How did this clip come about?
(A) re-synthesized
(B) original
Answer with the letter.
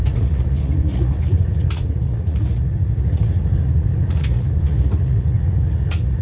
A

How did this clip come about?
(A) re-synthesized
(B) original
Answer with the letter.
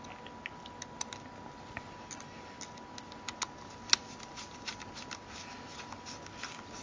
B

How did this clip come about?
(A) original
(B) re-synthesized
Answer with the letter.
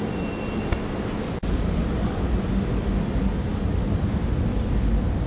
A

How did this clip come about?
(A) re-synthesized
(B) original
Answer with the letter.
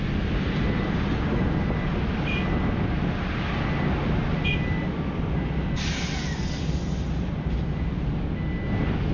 B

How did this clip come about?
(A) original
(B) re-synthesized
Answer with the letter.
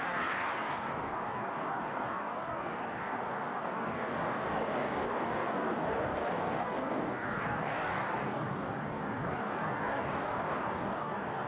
B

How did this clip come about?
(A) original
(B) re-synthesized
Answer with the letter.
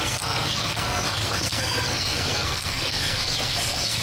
B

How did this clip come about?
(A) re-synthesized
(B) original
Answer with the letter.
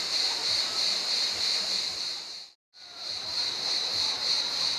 A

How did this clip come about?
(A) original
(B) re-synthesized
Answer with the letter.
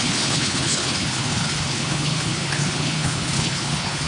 B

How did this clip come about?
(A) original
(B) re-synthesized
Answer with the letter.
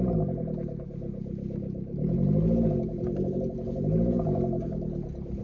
A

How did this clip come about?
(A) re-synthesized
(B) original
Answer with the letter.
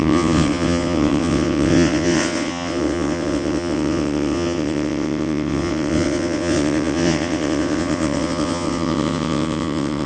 A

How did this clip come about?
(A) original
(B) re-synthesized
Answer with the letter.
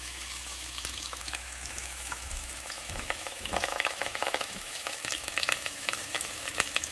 B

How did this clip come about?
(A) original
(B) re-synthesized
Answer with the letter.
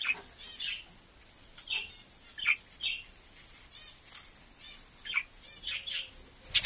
A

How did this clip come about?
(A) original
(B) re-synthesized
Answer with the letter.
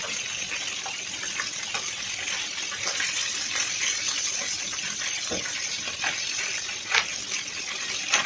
A